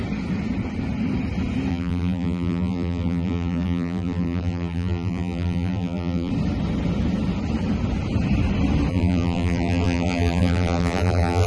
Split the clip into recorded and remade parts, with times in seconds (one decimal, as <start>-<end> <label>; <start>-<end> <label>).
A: 0.0-1.7 recorded; 1.7-6.3 remade; 6.3-8.9 recorded; 8.9-11.5 remade